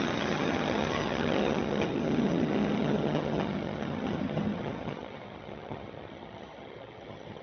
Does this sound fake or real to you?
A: fake